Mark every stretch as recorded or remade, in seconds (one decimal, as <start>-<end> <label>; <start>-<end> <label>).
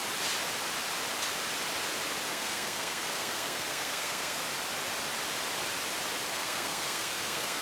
0.0-2.3 recorded; 2.3-4.4 remade; 4.4-6.3 recorded; 6.3-7.6 remade